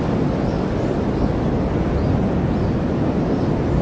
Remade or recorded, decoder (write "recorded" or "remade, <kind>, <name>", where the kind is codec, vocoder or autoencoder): recorded